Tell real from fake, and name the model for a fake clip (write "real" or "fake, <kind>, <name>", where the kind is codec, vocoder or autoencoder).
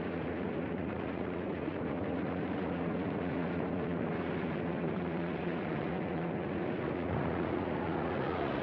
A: fake, vocoder, Vocos